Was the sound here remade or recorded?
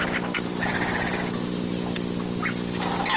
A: recorded